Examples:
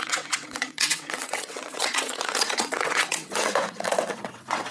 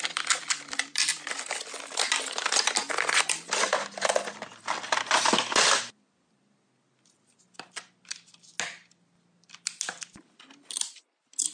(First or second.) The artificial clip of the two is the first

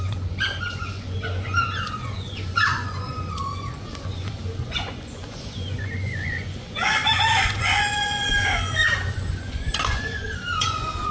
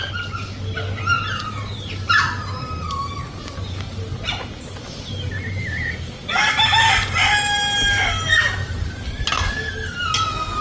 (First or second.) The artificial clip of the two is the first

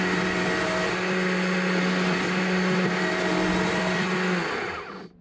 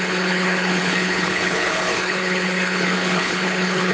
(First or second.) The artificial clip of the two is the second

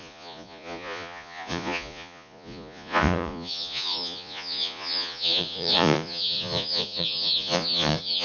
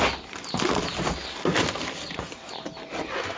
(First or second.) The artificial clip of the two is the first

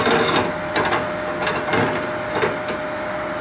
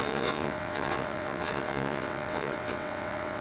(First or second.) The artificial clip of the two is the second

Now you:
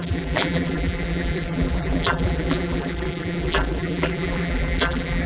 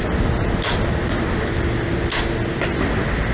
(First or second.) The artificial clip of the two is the first